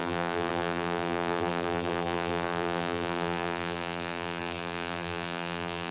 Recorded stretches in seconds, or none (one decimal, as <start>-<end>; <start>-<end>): none